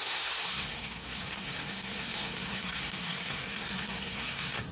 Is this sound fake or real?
fake